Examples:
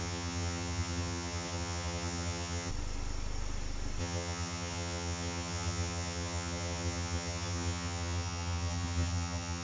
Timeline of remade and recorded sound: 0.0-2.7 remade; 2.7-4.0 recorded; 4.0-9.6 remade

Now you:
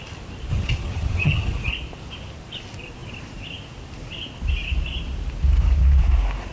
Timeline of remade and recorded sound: 0.0-0.5 recorded; 0.5-1.7 remade; 1.7-6.5 recorded

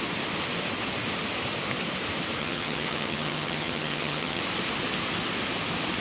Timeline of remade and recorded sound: 0.0-2.4 recorded; 2.4-4.4 remade; 4.4-6.0 recorded

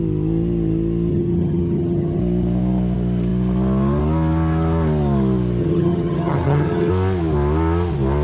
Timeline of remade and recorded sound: 0.0-1.1 recorded; 1.1-2.2 remade; 2.2-5.6 recorded; 5.6-6.9 remade; 6.9-8.2 recorded

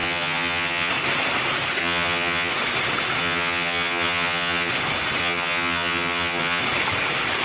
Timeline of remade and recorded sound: 0.0-0.9 remade; 0.9-1.8 recorded; 1.8-2.5 remade; 2.5-3.2 recorded; 3.2-4.7 remade; 4.7-5.2 recorded; 5.2-6.6 remade; 6.6-7.4 recorded